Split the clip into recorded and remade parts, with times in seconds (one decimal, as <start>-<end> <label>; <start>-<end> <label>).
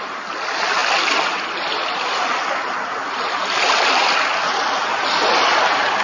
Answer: 0.0-6.0 recorded